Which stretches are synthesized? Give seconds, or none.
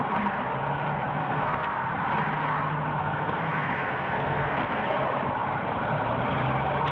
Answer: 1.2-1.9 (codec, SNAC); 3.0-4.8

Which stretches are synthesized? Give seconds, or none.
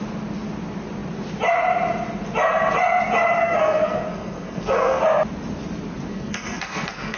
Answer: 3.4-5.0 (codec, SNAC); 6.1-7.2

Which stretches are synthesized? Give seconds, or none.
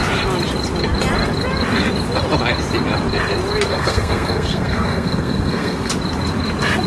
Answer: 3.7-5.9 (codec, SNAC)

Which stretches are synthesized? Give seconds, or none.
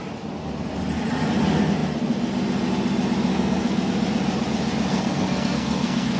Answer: 3.3-3.9 (codec, SNAC); 4.9-6.2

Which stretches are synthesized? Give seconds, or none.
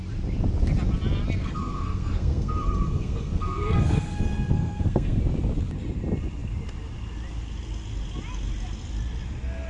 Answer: 1.4-5.2 (codec, SNAC)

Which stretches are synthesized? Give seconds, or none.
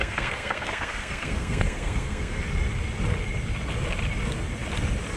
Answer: 0.0-2.4 (codec, SNAC)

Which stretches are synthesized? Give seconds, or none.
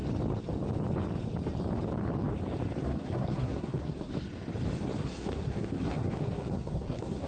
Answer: 2.8-4.1 (codec, SNAC); 5.0-7.3